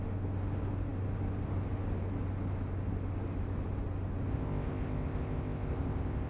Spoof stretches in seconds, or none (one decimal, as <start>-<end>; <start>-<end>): 4.3-6.3